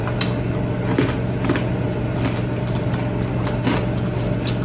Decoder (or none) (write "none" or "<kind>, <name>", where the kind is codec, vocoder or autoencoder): none